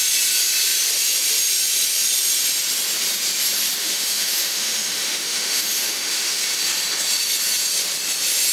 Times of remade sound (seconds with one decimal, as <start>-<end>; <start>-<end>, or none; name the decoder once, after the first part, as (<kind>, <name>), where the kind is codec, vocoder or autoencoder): 3.8-6.4 (autoencoder, DAC-VAE)